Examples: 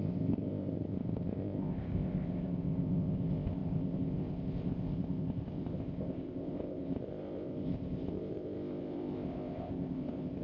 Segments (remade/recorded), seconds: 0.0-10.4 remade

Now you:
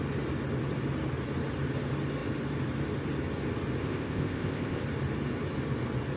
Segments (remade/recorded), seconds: 0.0-3.8 recorded; 3.8-4.8 remade; 4.8-6.2 recorded

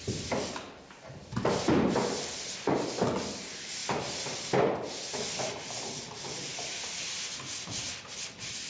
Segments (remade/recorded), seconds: 0.0-8.7 recorded

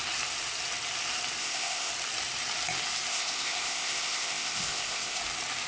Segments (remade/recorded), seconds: 0.0-1.4 recorded; 1.4-1.9 remade; 1.9-3.1 recorded; 3.1-5.2 remade; 5.2-5.7 recorded

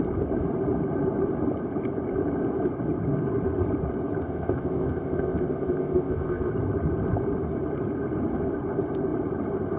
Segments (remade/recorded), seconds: 0.0-4.2 recorded; 4.2-6.5 remade; 6.5-9.8 recorded

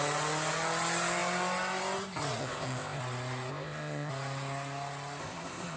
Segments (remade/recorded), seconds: 0.0-2.4 recorded; 2.4-3.0 remade; 3.0-3.5 recorded; 3.5-4.1 remade; 4.1-5.2 recorded; 5.2-5.8 remade